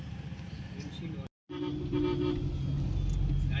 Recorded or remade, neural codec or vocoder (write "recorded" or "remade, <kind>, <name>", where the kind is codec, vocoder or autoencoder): recorded